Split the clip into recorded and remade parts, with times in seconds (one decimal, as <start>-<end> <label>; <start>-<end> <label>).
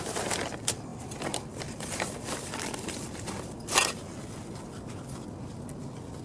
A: 0.0-0.9 recorded; 0.9-3.9 remade; 3.9-6.2 recorded